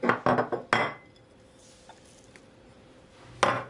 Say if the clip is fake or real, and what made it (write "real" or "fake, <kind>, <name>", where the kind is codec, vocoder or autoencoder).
real